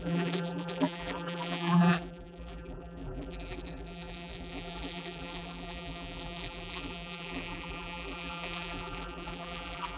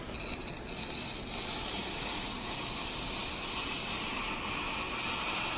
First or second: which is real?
second